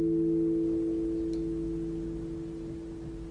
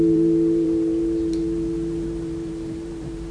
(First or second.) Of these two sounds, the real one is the first